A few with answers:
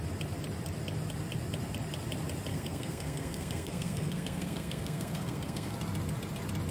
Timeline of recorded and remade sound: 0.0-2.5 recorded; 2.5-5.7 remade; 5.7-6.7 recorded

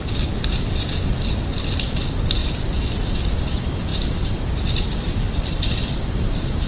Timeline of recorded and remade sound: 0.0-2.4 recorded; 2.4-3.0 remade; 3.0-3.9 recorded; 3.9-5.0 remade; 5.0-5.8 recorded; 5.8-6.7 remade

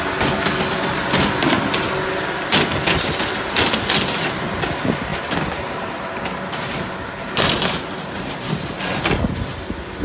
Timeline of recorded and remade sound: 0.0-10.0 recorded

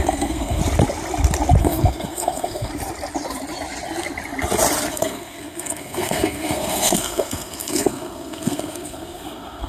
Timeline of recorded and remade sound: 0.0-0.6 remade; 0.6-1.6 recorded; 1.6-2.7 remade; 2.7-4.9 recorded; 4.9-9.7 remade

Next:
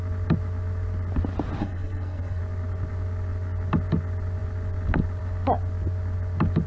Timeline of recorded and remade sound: 0.0-1.6 recorded; 1.6-2.4 remade; 2.4-6.7 recorded

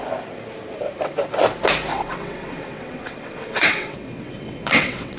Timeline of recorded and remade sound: 0.0-1.9 recorded; 1.9-5.2 remade